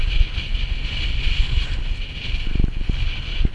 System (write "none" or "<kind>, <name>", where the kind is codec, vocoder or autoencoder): none